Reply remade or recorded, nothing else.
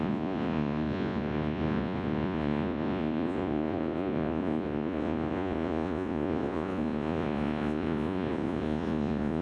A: remade